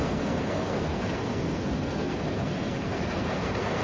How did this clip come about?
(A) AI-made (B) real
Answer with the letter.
A